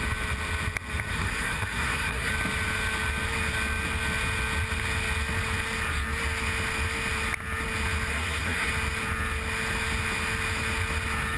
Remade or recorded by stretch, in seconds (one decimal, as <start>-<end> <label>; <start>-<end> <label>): 0.0-1.1 recorded; 1.1-2.3 remade; 2.3-8.1 recorded; 8.1-8.7 remade; 8.7-11.4 recorded